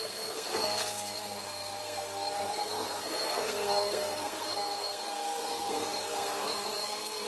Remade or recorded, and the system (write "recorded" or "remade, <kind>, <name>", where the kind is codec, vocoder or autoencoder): remade, codec, SNAC